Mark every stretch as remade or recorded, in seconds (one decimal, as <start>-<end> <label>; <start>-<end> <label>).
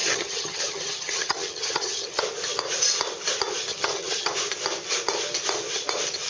0.0-2.2 remade; 2.2-3.7 recorded; 3.7-4.3 remade; 4.3-6.3 recorded